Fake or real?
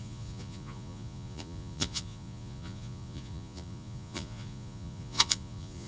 fake